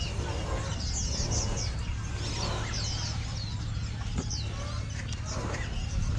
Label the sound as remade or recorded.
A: recorded